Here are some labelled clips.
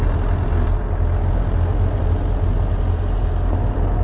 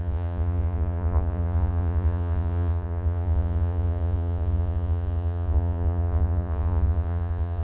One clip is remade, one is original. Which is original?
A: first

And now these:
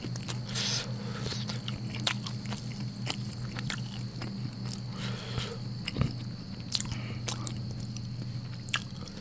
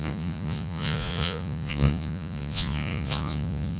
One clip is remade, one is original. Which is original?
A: first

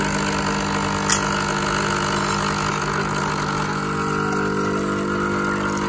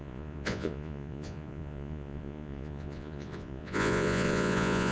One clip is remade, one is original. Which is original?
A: first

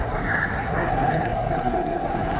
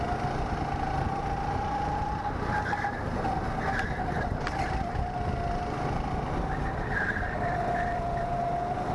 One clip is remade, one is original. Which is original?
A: second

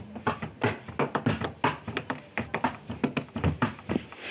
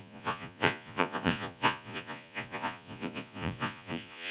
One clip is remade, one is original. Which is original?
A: first